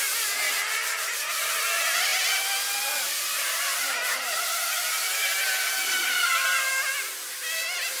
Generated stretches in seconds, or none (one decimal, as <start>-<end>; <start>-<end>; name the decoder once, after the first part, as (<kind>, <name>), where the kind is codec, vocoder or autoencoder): none